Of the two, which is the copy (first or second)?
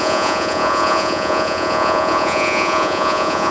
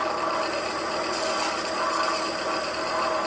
first